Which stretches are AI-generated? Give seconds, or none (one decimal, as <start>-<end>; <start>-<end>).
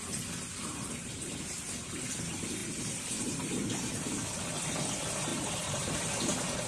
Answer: 2.6-3.9; 5.3-6.0